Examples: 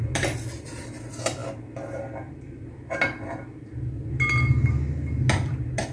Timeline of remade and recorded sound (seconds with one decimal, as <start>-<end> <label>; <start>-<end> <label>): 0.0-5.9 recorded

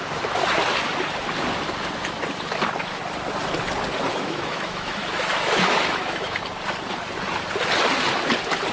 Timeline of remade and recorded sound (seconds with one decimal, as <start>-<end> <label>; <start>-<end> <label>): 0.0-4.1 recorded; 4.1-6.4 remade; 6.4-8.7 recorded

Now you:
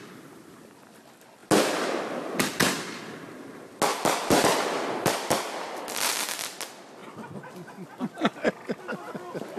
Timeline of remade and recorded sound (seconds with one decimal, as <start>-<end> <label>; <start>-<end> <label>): 0.0-3.9 recorded; 3.9-6.1 remade; 6.1-9.6 recorded

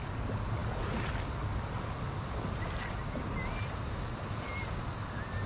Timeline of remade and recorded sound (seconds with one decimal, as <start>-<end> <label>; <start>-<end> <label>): 0.0-5.5 recorded

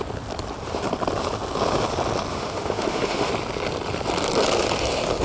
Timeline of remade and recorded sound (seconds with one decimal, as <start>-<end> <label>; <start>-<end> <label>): 0.0-2.3 recorded; 2.3-3.3 remade; 3.3-5.2 recorded

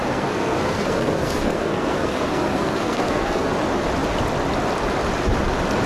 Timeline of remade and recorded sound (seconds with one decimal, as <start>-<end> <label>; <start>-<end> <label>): 0.0-3.5 remade; 3.5-5.9 recorded

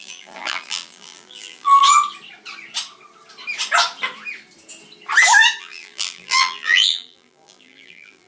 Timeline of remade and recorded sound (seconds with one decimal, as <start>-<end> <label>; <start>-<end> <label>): 0.0-1.8 remade; 1.8-5.6 recorded; 5.6-8.3 remade